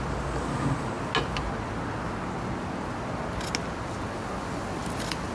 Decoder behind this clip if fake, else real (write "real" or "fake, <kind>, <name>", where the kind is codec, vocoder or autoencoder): real